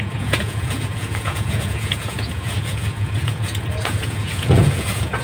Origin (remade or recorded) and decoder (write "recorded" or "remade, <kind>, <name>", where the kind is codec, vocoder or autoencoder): remade, vocoder, Vocos